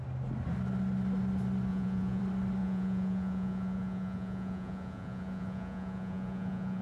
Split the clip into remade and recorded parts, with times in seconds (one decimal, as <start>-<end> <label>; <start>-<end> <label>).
0.0-1.7 recorded; 1.7-2.2 remade; 2.2-2.6 recorded; 2.6-6.8 remade